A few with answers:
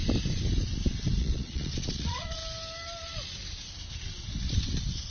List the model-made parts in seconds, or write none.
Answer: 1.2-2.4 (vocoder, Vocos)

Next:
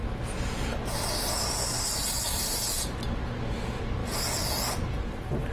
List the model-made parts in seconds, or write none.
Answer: none

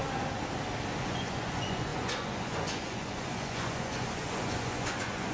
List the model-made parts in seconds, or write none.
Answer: 1.0-5.3 (vocoder, Vocos)